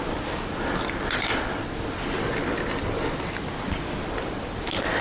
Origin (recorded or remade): recorded